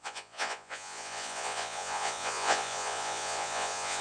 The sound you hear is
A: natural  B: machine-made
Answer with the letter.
B